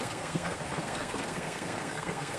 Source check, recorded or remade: remade